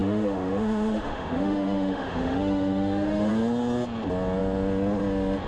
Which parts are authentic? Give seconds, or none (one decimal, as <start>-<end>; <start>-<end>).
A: 3.3-5.5